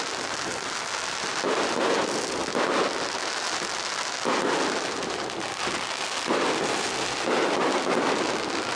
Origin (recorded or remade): recorded